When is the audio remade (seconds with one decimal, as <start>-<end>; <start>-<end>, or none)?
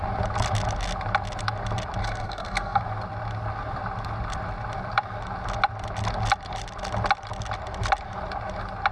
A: 2.0-2.8